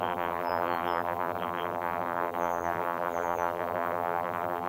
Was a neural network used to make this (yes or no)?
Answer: yes